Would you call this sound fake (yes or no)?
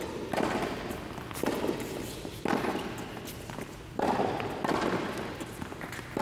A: no